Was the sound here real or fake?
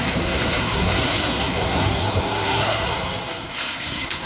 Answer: fake